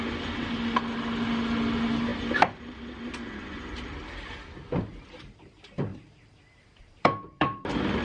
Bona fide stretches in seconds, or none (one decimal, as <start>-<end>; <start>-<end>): 0.0-5.9

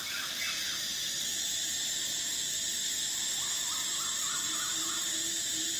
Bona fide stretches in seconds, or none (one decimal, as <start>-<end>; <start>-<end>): 0.0-5.8